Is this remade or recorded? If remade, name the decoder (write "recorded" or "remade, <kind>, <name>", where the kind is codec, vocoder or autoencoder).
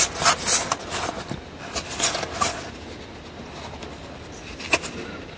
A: recorded